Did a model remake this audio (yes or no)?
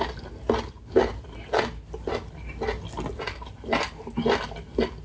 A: no